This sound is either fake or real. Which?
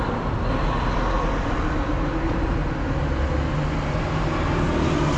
real